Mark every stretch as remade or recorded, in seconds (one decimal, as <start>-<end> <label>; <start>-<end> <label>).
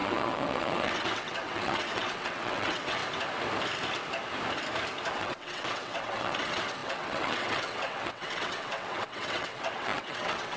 0.0-3.0 remade; 3.0-5.1 recorded; 5.1-10.6 remade